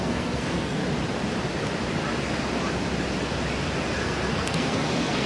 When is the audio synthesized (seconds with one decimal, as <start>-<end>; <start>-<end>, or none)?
0.0-0.8; 4.0-5.3